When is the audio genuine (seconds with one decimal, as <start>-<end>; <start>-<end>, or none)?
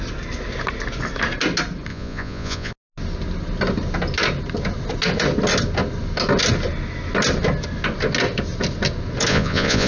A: 0.0-1.9; 2.7-9.3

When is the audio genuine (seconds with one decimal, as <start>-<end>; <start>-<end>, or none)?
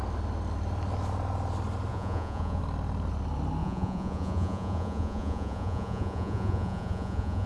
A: 0.0-1.9; 2.6-3.6